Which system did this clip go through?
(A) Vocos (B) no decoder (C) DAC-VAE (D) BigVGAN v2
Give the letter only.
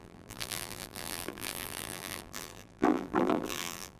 D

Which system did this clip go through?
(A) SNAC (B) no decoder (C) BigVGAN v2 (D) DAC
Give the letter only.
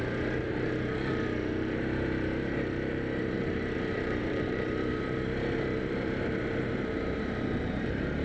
C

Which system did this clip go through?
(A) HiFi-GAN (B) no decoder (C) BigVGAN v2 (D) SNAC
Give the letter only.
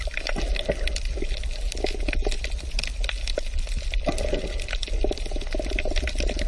B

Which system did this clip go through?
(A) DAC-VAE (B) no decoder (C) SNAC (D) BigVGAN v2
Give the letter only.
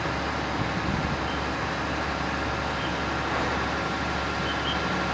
B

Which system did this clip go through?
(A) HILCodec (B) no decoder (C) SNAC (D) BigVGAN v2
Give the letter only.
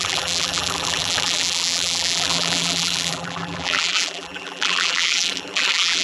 D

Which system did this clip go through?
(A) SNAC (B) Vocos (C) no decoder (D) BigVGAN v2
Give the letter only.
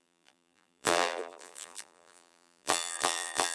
D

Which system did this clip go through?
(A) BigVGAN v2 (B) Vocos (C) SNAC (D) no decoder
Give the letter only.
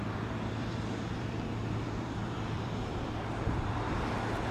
A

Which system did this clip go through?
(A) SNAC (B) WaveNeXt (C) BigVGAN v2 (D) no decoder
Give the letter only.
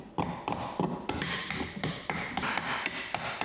D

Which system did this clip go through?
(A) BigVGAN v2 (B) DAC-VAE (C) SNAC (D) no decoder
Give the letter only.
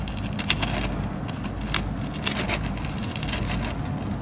D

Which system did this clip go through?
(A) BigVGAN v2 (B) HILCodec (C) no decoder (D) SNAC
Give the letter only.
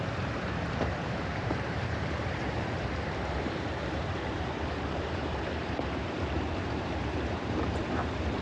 A